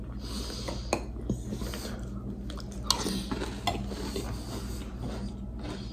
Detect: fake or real real